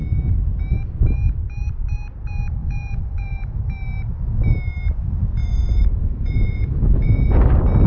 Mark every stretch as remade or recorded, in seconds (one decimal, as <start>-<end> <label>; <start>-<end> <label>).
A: 0.0-2.6 recorded; 2.6-3.6 remade; 3.6-5.4 recorded; 5.4-7.4 remade; 7.4-7.9 recorded